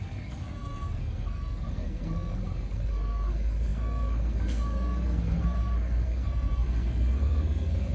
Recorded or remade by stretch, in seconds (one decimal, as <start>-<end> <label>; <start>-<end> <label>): 0.0-7.9 remade